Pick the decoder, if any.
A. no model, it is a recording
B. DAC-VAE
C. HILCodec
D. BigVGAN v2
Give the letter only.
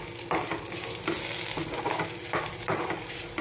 A